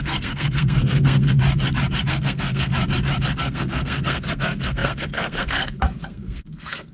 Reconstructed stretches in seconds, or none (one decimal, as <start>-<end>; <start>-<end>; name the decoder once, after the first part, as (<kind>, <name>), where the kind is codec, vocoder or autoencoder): 0.0-1.4 (codec, SNAC); 2.1-2.7; 3.4-6.9